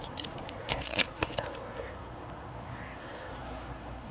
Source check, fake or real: fake